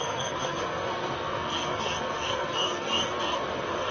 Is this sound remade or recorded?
remade